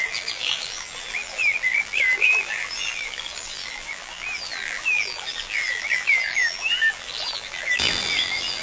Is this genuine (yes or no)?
no